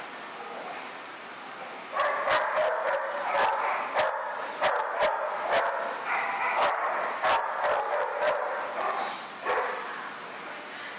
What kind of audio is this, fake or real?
real